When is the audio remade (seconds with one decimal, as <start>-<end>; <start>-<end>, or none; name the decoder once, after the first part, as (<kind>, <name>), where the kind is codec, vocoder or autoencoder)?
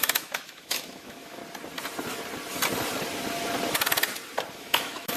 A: 0.0-1.4 (autoencoder, DAC-VAE); 4.5-5.2